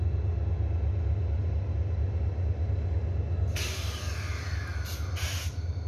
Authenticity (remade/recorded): recorded